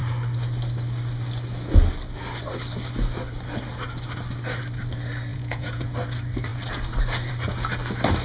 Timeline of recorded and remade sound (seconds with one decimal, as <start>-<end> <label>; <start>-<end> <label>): 0.0-5.3 recorded; 5.3-5.9 remade; 5.9-8.2 recorded